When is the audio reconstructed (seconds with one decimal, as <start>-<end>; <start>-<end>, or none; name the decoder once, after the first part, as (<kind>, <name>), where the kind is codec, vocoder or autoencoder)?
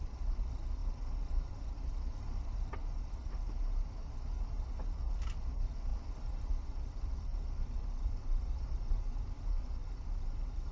0.0-2.8 (vocoder, BigVGAN v2); 5.0-9.8